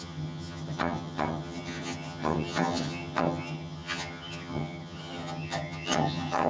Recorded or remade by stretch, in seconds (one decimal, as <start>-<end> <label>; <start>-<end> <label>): 0.0-6.5 remade